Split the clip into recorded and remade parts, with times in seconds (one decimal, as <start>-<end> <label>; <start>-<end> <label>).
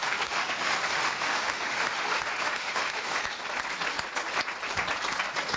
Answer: 0.0-3.4 remade; 3.4-5.6 recorded